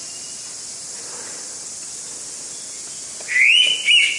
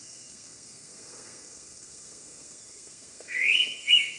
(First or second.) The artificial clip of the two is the second